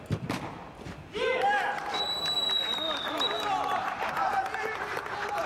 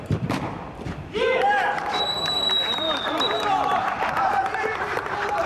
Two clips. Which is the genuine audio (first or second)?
first